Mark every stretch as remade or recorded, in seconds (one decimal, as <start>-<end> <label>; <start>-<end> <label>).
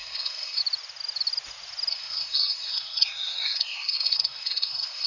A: 0.0-0.6 remade; 0.6-1.9 recorded; 1.9-5.1 remade